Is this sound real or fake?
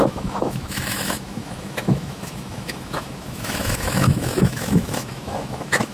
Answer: fake